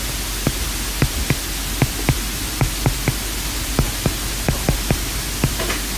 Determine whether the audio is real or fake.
real